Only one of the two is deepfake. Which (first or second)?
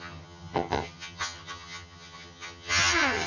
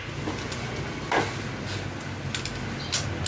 first